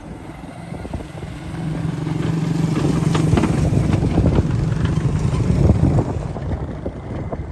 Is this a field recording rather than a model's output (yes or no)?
yes